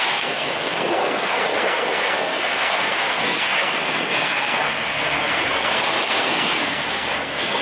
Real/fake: fake